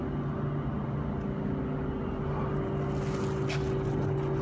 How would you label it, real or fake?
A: real